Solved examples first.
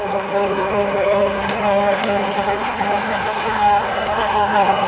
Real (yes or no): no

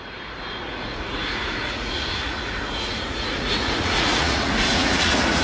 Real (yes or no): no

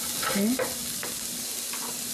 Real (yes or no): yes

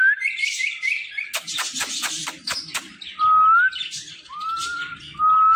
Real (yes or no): yes